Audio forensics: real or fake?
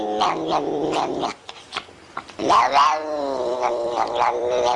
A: fake